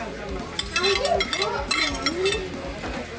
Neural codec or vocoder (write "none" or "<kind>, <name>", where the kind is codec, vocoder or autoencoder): none